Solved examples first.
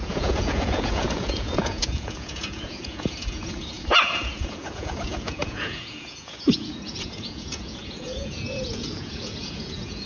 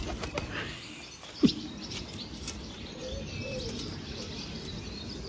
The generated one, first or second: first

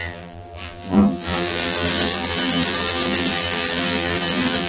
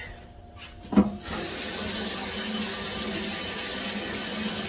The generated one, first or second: first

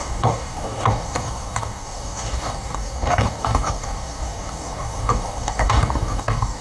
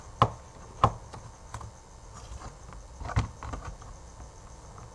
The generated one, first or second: first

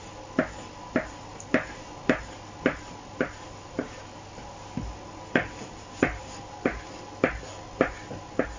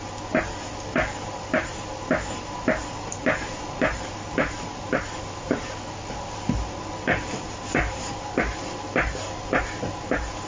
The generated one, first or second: second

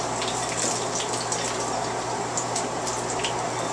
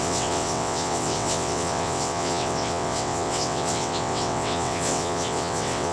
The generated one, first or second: second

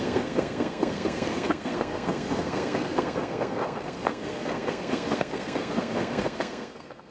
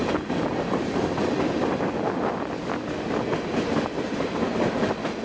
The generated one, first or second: first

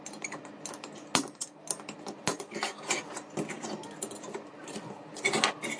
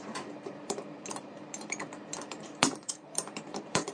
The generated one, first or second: second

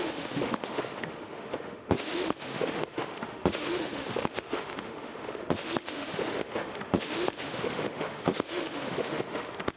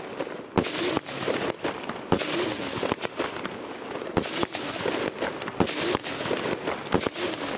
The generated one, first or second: first